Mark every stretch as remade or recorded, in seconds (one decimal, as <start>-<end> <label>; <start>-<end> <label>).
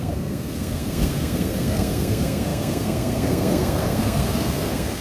0.0-5.0 remade